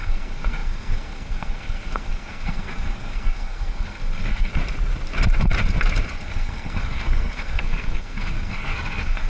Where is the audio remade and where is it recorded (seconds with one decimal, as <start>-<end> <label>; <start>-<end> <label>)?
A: 0.0-4.5 remade; 4.5-6.1 recorded; 6.1-9.3 remade